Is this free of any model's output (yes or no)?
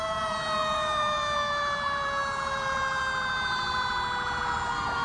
no